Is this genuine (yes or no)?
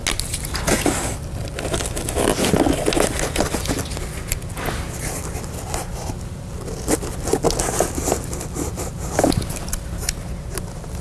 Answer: yes